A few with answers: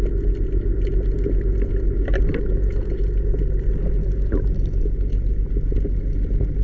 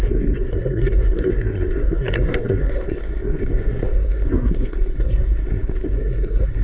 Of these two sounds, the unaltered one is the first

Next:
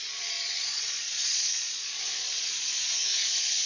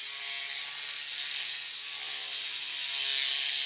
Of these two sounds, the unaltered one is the second